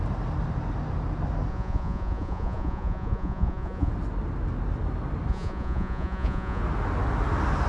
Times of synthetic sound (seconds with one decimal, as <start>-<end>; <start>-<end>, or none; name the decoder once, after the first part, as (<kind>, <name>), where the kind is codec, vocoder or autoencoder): 1.5-3.9 (vocoder, Vocos); 5.3-6.6